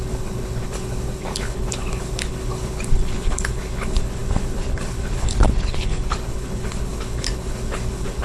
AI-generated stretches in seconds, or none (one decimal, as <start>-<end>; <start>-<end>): 0.0-8.2